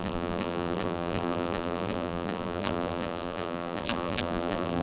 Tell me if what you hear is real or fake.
fake